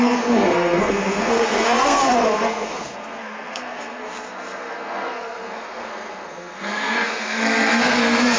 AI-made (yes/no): yes